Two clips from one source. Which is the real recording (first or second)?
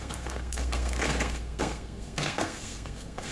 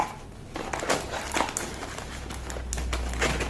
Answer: second